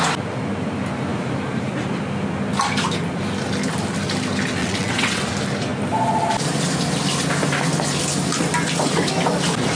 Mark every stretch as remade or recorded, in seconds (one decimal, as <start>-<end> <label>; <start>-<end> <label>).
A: 0.0-4.6 recorded; 4.6-5.2 remade; 5.2-9.8 recorded